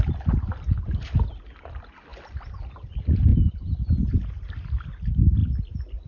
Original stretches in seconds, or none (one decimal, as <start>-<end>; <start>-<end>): 0.0-6.1